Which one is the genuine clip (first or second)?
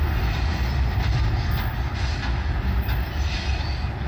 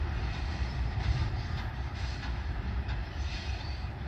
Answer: first